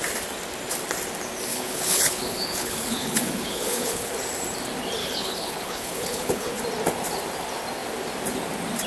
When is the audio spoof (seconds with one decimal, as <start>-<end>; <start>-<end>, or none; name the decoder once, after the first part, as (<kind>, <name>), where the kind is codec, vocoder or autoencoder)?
1.5-4.1 (codec, HILCodec); 5.0-6.5